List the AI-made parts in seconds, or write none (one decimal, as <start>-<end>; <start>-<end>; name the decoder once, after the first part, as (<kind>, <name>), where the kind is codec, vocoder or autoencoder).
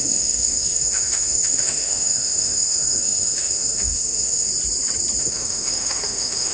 0.0-4.5 (autoencoder, DAC-VAE); 5.2-6.5